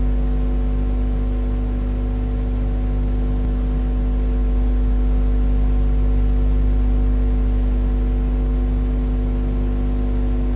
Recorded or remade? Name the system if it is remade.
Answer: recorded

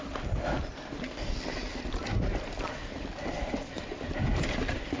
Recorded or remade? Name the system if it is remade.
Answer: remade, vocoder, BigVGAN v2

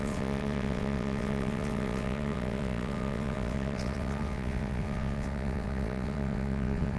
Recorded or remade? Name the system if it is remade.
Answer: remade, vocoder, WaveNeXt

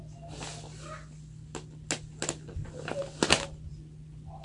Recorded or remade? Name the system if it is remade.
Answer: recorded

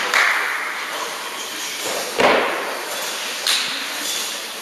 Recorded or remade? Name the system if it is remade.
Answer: remade, vocoder, BigVGAN v2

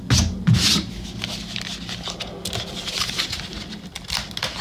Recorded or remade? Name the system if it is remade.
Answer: recorded